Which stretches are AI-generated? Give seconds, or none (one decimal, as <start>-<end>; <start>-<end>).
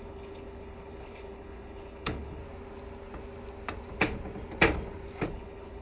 0.0-2.4; 5.3-5.8